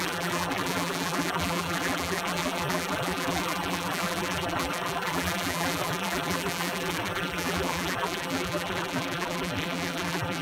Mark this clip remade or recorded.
remade